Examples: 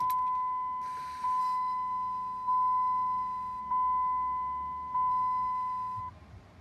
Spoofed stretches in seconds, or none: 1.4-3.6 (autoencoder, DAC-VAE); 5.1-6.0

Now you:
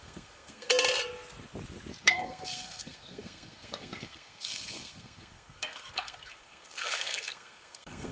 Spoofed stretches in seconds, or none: 0.0-0.7 (codec, SNAC); 2.0-8.1

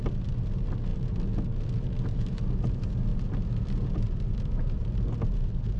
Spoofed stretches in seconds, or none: none

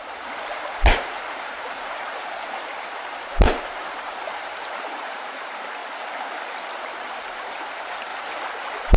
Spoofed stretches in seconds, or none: 0.0-5.8 (vocoder, BigVGAN v2); 6.8-8.1

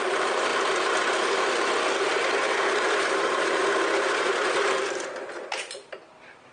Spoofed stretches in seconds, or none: 0.0-0.5 (vocoder, BigVGAN v2); 2.3-3.6; 4.6-6.5

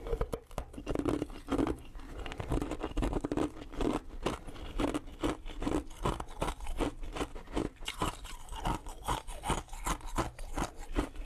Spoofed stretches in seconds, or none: 7.6-8.6 (vocoder, BigVGAN v2)